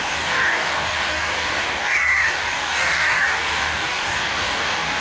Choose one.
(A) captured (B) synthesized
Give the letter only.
B